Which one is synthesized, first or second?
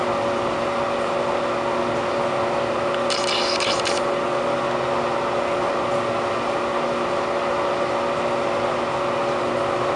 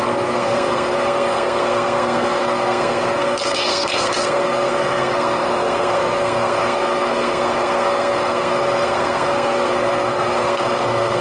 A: second